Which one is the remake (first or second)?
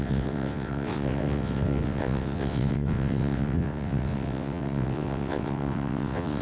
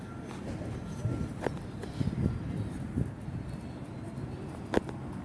first